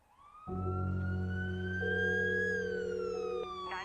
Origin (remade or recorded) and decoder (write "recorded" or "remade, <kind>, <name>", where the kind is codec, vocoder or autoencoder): recorded